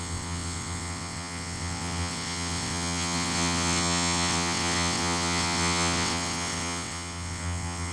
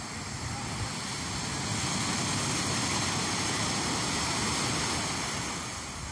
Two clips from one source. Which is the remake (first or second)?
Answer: first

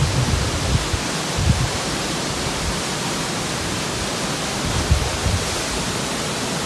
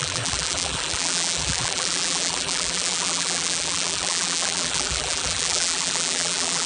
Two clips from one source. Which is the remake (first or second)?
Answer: second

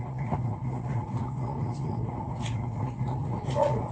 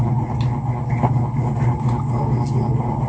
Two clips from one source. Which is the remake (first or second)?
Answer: first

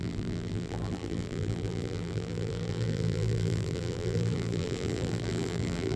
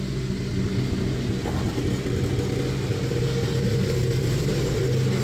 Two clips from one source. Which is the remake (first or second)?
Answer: first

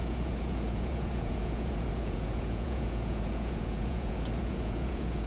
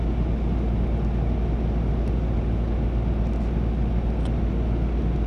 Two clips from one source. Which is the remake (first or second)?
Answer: first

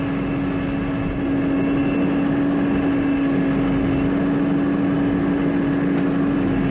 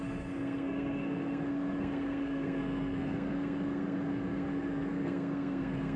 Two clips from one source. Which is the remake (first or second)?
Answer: second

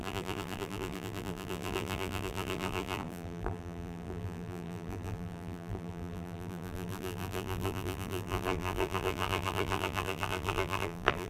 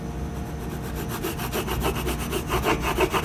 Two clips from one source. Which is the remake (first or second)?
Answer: first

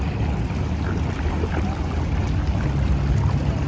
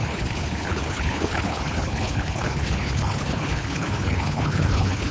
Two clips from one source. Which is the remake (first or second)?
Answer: second